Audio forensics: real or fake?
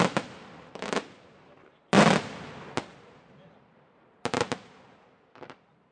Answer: real